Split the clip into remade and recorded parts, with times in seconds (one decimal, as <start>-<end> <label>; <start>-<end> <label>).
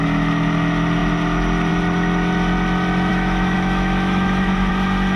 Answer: 0.0-3.1 recorded; 3.1-4.7 remade; 4.7-5.2 recorded